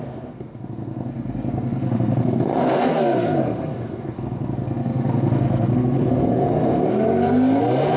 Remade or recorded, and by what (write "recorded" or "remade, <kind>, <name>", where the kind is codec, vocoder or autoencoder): remade, codec, SNAC